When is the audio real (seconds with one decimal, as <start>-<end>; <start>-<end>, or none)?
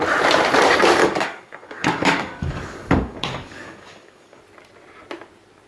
0.0-1.0; 4.4-5.7